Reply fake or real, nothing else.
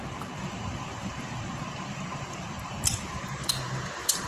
fake